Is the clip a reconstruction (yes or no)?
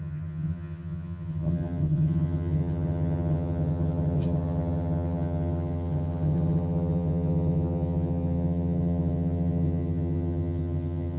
yes